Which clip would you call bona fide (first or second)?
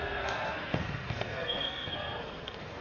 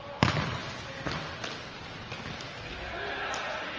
second